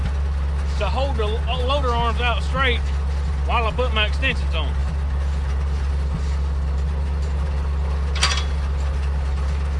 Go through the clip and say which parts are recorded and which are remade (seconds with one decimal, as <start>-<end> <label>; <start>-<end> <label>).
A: 0.0-9.8 recorded